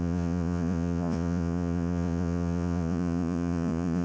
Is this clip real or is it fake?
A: fake